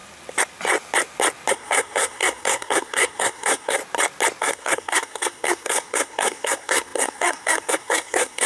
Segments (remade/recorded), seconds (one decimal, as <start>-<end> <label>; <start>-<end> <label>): 0.0-1.5 recorded; 1.5-3.8 remade; 3.8-4.4 recorded; 4.4-8.5 remade